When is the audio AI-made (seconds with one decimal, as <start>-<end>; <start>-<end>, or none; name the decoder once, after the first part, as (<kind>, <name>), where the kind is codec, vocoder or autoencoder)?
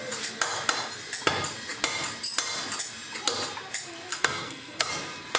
4.1-4.9 (codec, SNAC)